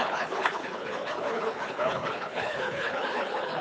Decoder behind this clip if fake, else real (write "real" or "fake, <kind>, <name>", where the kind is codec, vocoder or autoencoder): fake, codec, HILCodec